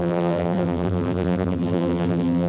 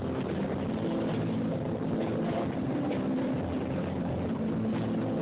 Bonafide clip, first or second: second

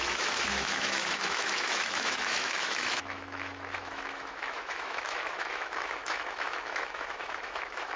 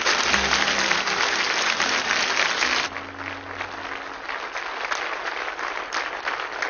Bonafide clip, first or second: second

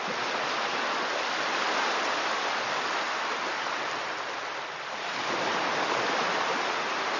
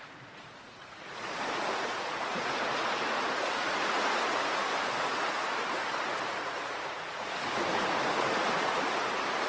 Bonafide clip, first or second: first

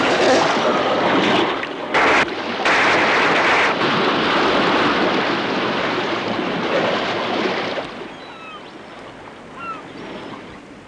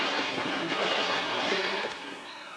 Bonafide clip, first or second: first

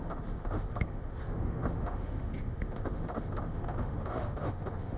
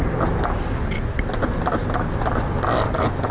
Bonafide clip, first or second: second